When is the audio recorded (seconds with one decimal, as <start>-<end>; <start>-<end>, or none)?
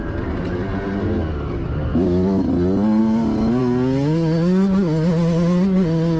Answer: 0.0-1.9; 2.5-6.2